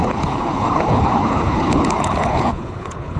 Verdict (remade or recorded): remade